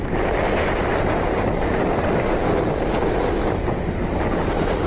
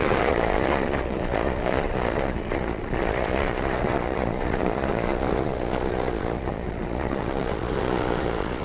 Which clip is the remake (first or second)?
second